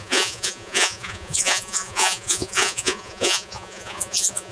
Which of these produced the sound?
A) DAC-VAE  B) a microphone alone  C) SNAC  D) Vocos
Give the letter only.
D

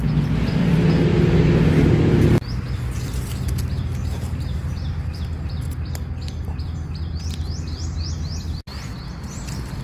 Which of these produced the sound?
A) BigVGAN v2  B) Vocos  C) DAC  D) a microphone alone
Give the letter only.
D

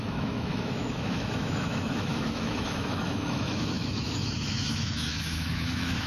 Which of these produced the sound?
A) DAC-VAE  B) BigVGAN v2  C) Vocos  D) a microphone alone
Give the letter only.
A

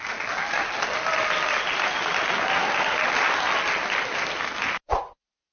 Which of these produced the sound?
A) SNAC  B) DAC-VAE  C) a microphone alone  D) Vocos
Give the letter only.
C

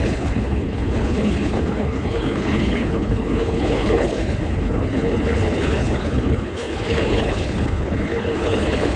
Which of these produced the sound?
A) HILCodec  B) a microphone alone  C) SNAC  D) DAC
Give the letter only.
A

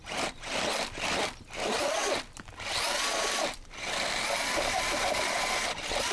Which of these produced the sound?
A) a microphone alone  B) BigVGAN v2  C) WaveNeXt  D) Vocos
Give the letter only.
A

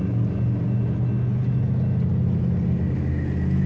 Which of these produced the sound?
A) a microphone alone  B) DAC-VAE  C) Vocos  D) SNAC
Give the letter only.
A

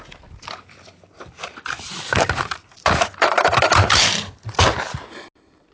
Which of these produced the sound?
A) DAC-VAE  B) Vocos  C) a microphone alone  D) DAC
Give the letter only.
C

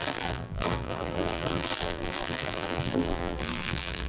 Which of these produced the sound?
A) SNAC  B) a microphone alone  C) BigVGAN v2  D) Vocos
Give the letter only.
C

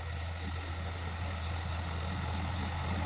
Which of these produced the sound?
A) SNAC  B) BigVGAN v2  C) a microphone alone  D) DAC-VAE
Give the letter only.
C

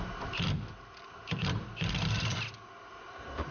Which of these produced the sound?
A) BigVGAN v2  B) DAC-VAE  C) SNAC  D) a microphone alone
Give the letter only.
A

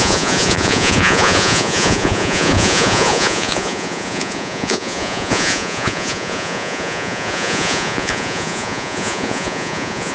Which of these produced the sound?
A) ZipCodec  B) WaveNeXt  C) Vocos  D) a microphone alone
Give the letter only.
C